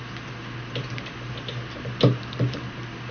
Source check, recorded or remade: recorded